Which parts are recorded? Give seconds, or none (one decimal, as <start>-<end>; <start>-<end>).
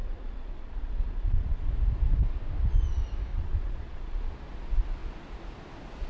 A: 1.7-3.3; 4.2-6.1